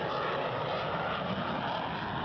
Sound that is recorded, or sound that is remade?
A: recorded